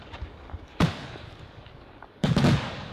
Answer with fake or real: fake